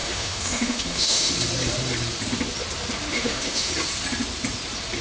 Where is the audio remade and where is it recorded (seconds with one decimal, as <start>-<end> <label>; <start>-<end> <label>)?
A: 0.0-1.3 remade; 1.3-3.1 recorded; 3.1-3.7 remade; 3.7-5.0 recorded